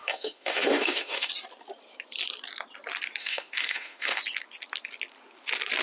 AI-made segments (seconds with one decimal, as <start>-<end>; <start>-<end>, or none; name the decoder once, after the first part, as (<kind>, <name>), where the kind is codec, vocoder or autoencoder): 0.0-1.3 (autoencoder, DAC-VAE); 3.2-4.2